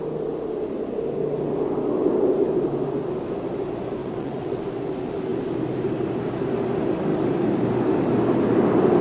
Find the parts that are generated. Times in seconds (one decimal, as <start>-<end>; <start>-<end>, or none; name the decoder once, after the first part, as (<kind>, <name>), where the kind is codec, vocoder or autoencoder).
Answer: 4.0-4.6 (vocoder, WaveNeXt)